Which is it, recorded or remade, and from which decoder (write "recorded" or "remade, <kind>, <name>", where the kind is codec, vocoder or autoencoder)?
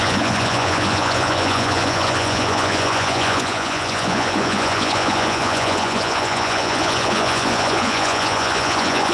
remade, vocoder, Vocos